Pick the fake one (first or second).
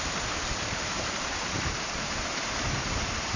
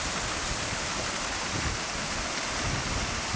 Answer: first